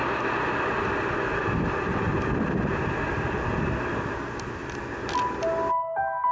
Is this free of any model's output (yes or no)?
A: yes